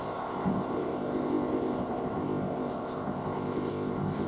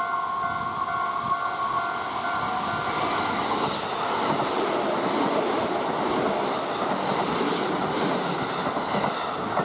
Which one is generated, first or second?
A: first